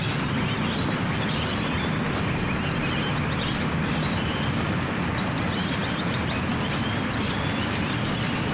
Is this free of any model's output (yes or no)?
no